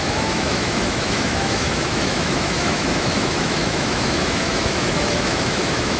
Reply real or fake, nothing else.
fake